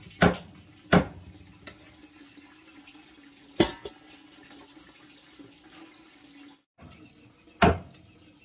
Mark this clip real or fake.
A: real